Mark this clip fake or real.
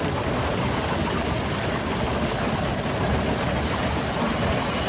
real